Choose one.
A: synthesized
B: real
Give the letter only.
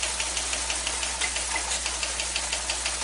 B